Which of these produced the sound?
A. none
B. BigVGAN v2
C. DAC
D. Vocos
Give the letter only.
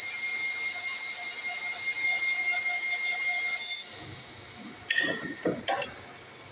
A